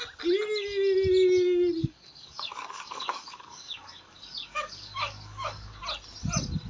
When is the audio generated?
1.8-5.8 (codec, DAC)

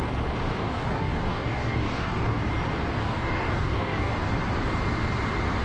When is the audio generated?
0.6-2.5 (codec, DAC); 3.0-4.3

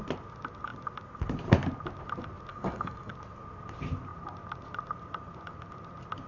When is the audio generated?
2.5-3.1 (codec, DAC)